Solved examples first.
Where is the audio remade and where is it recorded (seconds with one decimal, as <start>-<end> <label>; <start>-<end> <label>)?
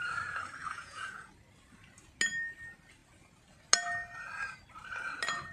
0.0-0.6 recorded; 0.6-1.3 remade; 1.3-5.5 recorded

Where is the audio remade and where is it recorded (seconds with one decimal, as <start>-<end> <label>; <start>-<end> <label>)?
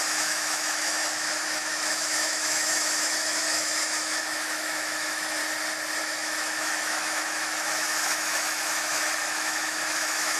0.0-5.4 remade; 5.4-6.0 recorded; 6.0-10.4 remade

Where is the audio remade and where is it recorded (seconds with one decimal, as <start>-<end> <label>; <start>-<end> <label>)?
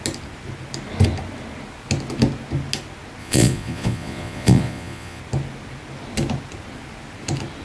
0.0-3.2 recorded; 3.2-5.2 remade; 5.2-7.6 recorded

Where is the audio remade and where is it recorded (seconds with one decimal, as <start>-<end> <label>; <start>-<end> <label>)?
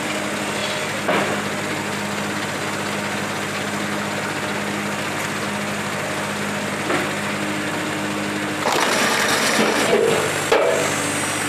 0.0-11.5 recorded